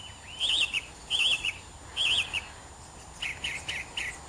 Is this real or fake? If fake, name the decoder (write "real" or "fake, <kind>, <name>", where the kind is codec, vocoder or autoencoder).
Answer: real